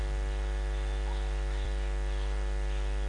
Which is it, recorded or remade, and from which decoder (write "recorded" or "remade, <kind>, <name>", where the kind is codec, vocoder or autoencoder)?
recorded